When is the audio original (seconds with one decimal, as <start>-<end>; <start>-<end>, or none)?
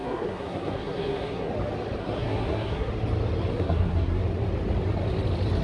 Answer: 1.5-2.0; 2.9-3.5; 4.2-5.6